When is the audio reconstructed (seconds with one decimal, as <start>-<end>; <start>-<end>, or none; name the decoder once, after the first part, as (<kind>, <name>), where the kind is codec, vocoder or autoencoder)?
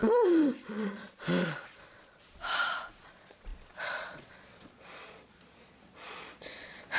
0.0-7.0 (vocoder, Vocos)